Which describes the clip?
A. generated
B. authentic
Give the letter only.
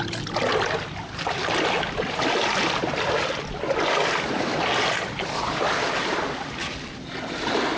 B